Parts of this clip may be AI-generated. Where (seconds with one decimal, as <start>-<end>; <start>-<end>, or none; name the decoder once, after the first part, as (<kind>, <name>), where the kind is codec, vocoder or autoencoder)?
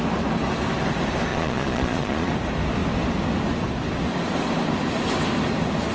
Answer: 1.3-2.3 (vocoder, Vocos)